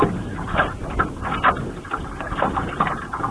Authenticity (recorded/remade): recorded